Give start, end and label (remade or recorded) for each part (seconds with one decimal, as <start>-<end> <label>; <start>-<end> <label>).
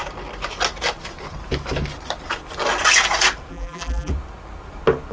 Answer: 0.0-3.5 recorded; 3.5-4.1 remade; 4.1-5.1 recorded